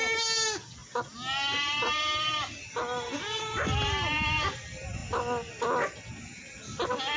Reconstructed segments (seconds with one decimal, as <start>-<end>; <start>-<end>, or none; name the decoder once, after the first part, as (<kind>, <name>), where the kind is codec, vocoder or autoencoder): none